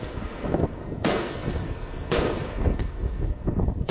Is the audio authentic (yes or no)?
no